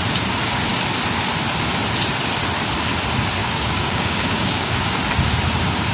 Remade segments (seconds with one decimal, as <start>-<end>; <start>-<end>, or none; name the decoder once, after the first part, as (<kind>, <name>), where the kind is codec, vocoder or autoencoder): 3.4-4.9 (codec, DAC)